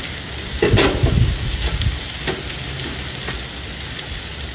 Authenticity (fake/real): real